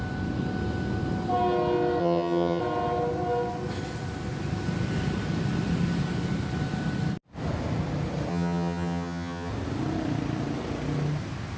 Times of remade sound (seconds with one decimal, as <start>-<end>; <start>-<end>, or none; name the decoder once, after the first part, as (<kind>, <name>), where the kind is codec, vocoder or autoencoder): 2.0-2.6 (vocoder, HiFi-GAN); 8.3-9.5